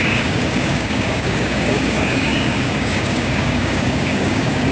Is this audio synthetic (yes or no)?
yes